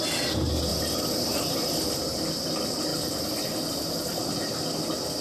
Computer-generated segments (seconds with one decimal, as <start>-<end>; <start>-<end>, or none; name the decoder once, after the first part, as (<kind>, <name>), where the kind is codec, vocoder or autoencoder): 0.7-2.0 (vocoder, BigVGAN v2); 2.9-4.2